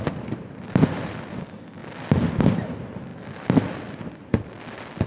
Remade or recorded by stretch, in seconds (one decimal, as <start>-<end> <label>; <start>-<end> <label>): 0.0-1.8 remade; 1.8-2.4 recorded; 2.4-5.1 remade